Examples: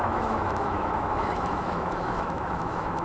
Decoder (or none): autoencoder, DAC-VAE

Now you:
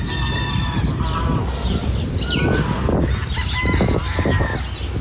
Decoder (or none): none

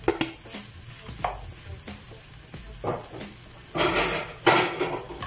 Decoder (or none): none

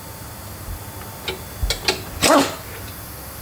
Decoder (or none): none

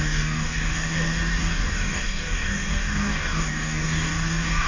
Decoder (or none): codec, DAC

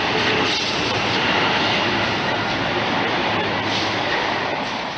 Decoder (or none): none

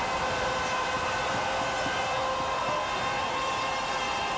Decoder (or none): none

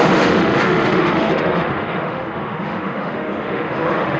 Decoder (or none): autoencoder, DAC-VAE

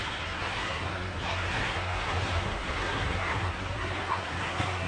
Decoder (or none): codec, SNAC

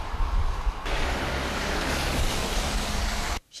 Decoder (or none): codec, DAC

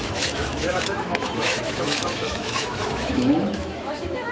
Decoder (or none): autoencoder, DAC-VAE